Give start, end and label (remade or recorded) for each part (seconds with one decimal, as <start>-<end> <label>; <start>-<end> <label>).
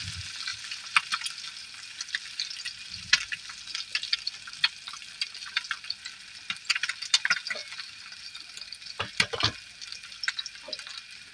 0.0-0.5 recorded; 0.5-1.2 remade; 1.2-3.9 recorded; 3.9-6.1 remade; 6.1-11.3 recorded